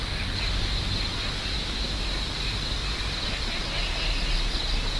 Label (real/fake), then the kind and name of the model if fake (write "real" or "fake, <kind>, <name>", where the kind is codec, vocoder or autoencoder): real